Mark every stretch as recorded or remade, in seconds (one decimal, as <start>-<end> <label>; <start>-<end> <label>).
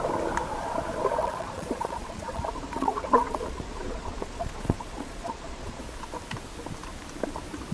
0.0-1.2 recorded; 1.2-5.8 remade; 5.8-7.7 recorded